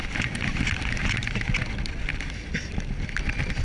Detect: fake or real real